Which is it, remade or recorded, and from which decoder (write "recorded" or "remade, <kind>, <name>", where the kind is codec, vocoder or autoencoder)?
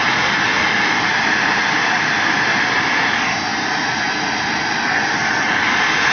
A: recorded